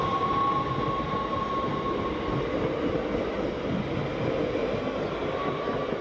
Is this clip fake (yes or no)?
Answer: no